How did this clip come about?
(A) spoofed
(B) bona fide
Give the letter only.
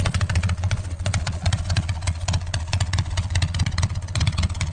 A